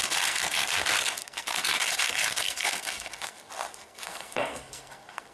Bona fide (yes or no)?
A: no